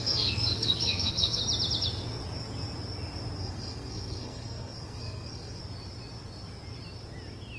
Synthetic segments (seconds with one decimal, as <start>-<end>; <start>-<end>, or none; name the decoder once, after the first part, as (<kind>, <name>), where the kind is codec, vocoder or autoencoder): 0.0-1.4 (codec, SNAC); 3.4-5.6